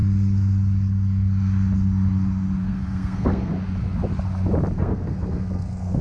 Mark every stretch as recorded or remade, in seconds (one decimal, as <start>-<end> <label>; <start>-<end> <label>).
0.0-2.6 recorded; 2.6-3.5 remade; 3.5-4.8 recorded; 4.8-6.0 remade